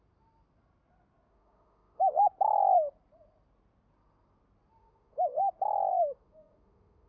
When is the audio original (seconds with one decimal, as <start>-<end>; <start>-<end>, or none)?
0.0-1.3; 2.1-4.8; 5.5-5.9